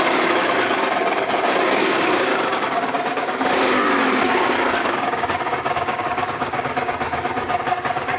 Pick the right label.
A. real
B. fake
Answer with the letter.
B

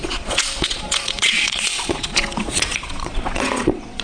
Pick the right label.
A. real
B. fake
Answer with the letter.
B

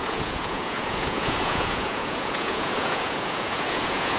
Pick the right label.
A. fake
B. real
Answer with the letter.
A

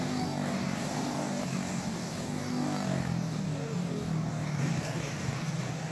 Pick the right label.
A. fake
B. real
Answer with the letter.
A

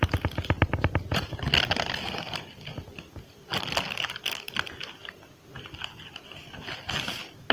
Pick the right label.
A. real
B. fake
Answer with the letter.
A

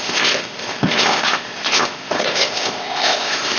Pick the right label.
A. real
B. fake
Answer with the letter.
B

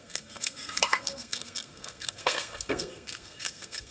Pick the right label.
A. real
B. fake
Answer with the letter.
B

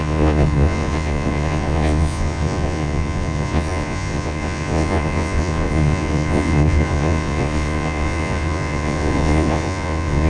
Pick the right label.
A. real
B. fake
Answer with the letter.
B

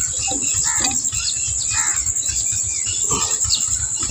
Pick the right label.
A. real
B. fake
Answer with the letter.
A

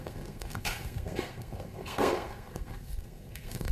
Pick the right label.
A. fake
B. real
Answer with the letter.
A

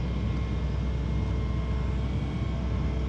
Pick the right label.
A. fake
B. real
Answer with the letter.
B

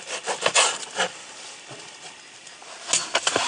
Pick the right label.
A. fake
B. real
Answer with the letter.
B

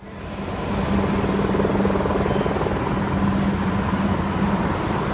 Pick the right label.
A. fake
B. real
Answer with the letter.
B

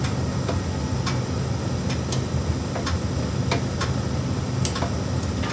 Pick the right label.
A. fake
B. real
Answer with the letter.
B